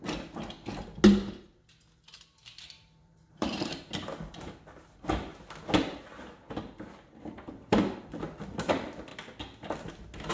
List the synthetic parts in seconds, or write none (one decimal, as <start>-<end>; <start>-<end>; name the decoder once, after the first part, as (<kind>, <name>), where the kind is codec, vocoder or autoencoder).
3.0-3.9 (vocoder, BigVGAN v2)